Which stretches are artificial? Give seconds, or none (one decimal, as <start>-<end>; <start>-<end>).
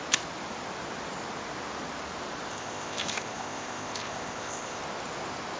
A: 2.5-4.8